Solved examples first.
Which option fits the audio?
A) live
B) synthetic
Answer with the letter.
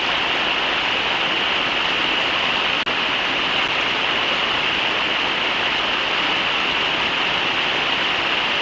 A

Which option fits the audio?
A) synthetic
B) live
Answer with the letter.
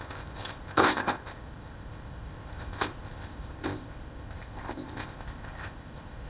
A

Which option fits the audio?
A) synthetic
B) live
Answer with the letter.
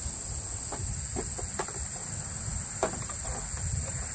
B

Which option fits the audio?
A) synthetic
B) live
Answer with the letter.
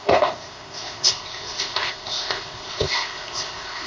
A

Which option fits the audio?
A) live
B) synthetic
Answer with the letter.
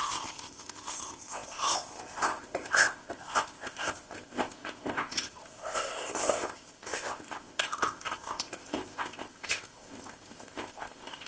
B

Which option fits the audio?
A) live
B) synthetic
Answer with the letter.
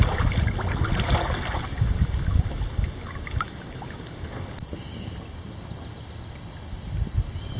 A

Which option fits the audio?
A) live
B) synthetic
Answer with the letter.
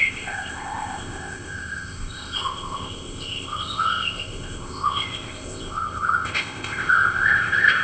B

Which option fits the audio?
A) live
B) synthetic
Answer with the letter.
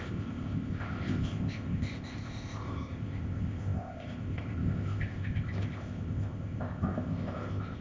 B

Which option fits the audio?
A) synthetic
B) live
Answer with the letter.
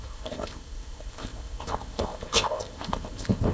A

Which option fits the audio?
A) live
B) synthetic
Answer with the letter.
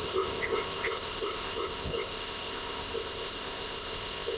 B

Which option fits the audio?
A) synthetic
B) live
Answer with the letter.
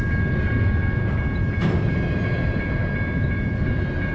B